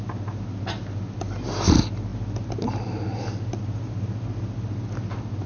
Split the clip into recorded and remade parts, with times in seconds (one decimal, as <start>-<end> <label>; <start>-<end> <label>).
0.0-5.5 recorded